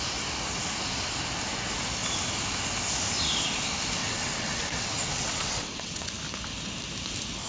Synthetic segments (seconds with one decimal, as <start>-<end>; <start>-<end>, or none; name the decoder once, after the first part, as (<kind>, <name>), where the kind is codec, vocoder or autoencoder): 4.0-6.1 (vocoder, WaveNeXt)